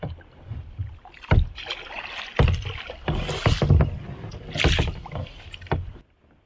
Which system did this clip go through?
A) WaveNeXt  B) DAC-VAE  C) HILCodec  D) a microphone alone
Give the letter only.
D